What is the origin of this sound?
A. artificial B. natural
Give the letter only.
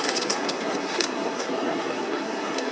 A